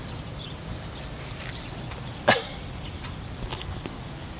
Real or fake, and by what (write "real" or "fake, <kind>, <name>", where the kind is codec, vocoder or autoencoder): real